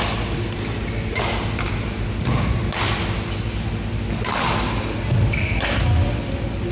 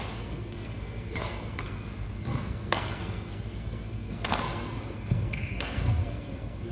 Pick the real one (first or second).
first